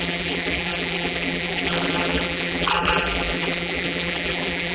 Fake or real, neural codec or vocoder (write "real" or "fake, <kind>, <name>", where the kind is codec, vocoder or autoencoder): fake, vocoder, BigVGAN v2